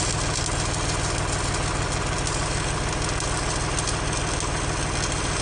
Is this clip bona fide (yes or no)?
yes